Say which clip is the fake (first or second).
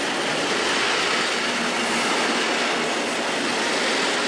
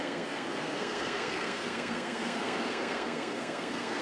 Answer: second